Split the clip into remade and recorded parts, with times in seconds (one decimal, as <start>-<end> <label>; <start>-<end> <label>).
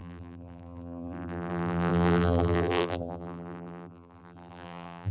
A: 0.0-5.1 remade